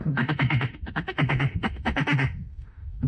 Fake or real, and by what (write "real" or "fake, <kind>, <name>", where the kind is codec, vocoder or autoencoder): fake, autoencoder, DAC-VAE